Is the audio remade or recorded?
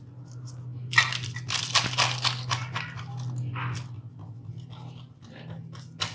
recorded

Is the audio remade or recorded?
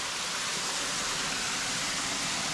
recorded